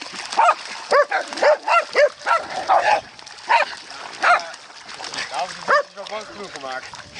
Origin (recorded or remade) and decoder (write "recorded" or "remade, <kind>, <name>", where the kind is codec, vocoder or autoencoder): recorded